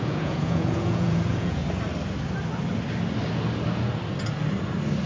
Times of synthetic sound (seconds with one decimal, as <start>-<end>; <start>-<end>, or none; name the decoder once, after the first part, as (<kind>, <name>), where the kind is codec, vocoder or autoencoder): 0.0-1.6 (vocoder, Vocos)